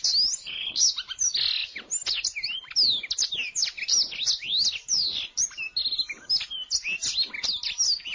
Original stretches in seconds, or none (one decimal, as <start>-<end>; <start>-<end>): 0.0-0.4; 0.9-8.1